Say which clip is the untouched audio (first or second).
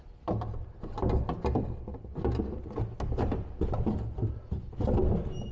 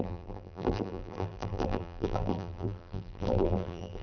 first